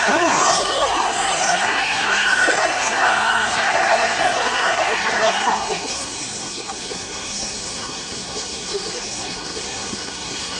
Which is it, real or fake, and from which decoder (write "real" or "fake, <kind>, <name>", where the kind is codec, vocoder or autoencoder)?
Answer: fake, codec, SNAC